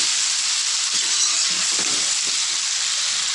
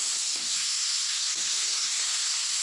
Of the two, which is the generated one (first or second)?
second